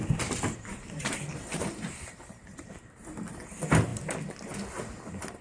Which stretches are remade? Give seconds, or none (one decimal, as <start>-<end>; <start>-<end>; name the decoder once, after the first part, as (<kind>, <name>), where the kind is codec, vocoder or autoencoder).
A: 0.7-3.1 (vocoder, BigVGAN v2)